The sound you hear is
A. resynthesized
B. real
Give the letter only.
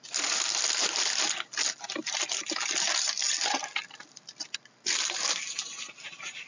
B